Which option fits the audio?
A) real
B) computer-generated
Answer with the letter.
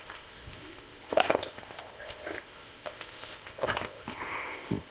B